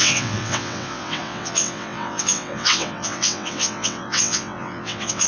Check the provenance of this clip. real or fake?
fake